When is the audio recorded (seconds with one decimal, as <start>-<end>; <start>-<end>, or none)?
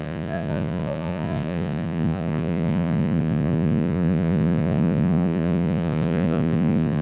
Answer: none